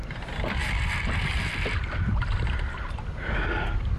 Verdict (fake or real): real